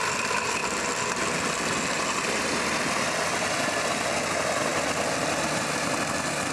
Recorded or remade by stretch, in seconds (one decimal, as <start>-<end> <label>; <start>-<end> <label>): 0.0-6.5 recorded